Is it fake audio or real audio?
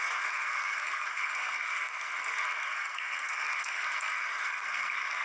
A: fake